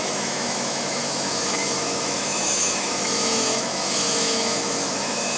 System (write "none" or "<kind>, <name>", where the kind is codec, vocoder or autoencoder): autoencoder, DAC-VAE